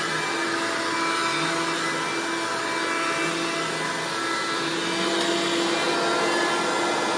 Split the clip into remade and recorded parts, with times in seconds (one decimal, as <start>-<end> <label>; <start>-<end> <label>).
0.0-7.2 recorded